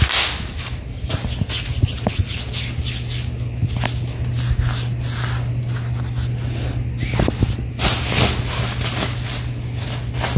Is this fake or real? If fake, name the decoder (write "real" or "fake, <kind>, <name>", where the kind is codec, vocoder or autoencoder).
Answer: real